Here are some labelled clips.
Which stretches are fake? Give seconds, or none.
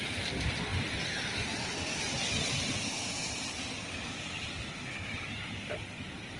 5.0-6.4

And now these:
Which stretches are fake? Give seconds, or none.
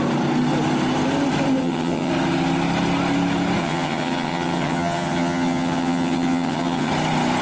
1.6-2.1; 3.6-6.9